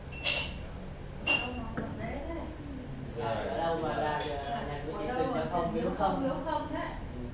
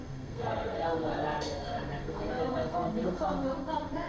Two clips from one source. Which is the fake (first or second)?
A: second